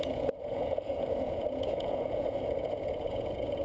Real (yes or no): no